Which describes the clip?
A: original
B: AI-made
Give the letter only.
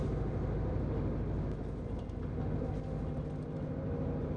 A